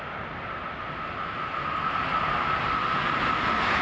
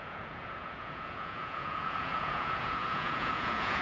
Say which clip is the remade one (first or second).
second